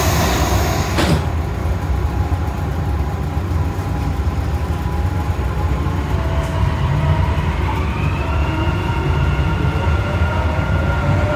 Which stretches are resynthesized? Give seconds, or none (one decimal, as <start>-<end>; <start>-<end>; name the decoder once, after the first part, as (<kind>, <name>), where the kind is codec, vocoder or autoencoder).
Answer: 8.4-11.4 (vocoder, Vocos)